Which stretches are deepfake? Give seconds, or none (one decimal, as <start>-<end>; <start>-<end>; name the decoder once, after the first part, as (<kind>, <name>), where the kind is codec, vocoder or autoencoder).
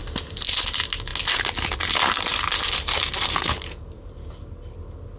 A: none